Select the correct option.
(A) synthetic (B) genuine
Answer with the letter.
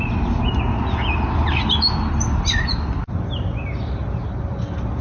B